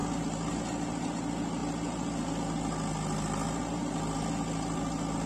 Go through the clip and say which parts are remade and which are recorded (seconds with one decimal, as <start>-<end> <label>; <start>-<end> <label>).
0.0-5.3 recorded